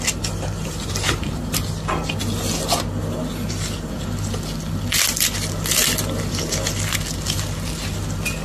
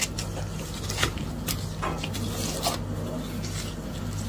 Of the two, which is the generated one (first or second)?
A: first